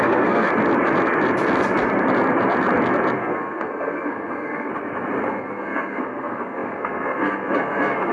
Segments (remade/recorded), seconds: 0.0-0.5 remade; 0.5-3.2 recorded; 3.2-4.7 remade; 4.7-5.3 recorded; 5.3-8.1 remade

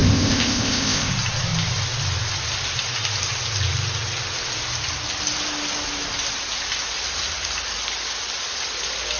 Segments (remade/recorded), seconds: 0.0-1.1 remade; 1.1-9.2 recorded

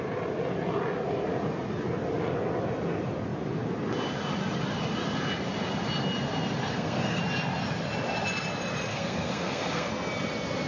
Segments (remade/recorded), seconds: 0.0-6.7 recorded; 6.7-7.2 remade; 7.2-8.9 recorded; 8.9-9.9 remade; 9.9-10.7 recorded

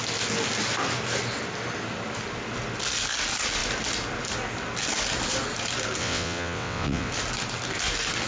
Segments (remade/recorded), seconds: 0.0-6.0 recorded; 6.0-7.1 remade; 7.1-8.3 recorded